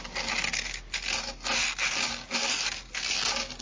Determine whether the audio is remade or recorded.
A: recorded